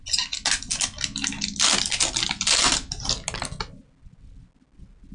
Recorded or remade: recorded